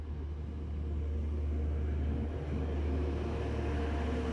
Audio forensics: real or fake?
real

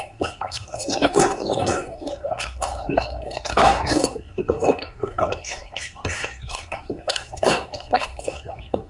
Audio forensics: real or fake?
fake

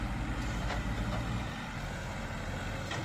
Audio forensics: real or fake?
real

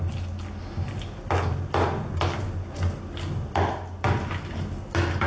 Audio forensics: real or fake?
real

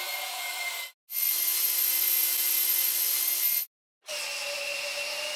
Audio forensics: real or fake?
real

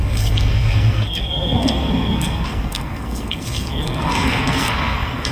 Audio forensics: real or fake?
fake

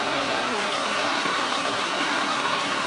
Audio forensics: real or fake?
fake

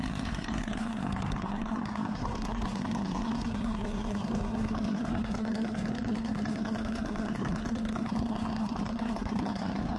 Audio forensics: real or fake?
fake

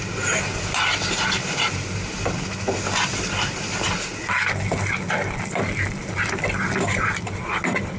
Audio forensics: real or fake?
real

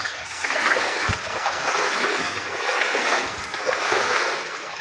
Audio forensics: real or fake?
fake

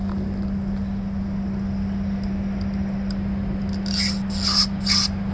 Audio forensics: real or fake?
real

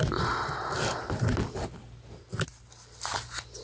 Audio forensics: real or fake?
real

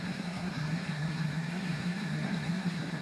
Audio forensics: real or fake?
fake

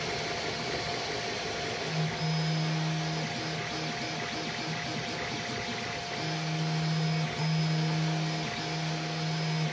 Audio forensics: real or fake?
real